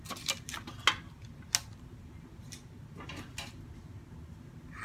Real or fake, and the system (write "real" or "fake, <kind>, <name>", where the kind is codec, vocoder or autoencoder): real